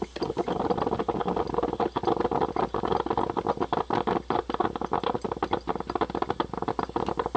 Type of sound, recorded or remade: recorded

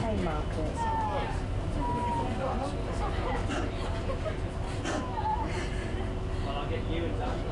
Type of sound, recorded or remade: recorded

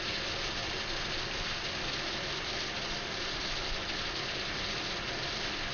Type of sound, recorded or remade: remade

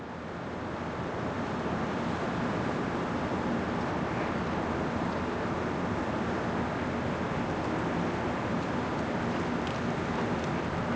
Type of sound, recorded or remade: recorded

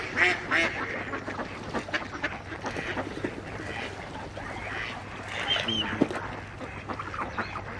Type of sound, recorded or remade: recorded